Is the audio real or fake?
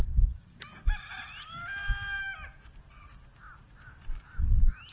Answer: real